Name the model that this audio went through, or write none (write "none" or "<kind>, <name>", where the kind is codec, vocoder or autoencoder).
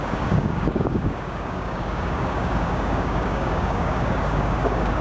codec, DAC